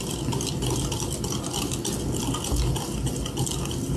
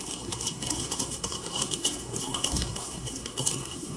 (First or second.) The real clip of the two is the first